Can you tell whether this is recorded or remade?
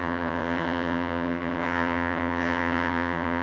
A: remade